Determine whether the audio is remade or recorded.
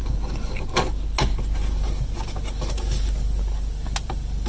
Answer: recorded